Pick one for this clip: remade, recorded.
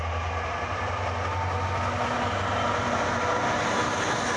recorded